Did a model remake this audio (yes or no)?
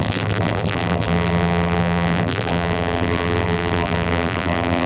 yes